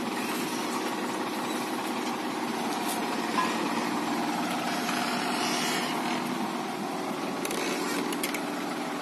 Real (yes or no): yes